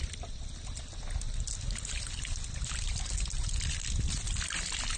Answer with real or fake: real